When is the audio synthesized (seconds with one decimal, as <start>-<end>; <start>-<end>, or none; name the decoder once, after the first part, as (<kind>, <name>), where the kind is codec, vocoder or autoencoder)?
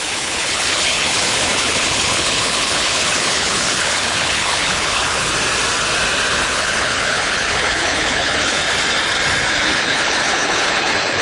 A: 0.0-5.3 (codec, HILCodec); 6.3-8.6; 9.5-11.2